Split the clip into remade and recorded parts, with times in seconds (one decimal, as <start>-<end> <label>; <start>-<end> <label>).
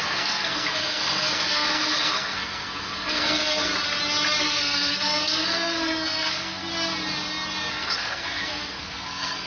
0.0-3.7 remade; 3.7-4.4 recorded; 4.4-6.7 remade; 6.7-7.7 recorded; 7.7-9.5 remade